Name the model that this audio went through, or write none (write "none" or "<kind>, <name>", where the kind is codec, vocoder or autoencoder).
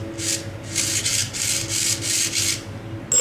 none